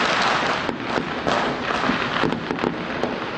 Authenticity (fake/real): real